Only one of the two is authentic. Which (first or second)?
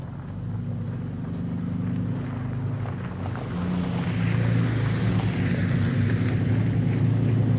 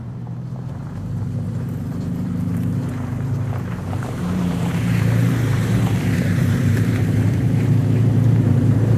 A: first